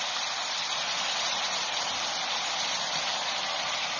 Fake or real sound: real